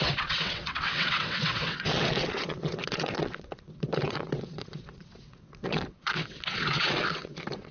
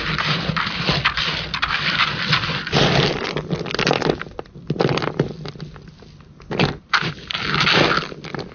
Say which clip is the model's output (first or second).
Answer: first